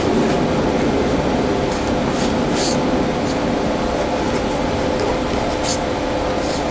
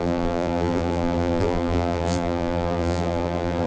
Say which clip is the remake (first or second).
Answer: second